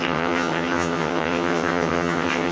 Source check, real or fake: fake